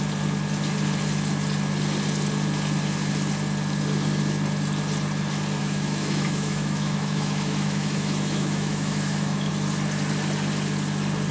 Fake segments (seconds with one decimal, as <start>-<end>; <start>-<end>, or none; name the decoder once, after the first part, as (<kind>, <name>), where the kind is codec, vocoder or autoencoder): 5.6-9.5 (autoencoder, DAC-VAE)